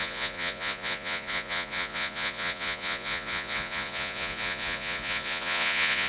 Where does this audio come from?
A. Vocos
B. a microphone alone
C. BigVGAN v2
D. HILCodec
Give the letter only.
A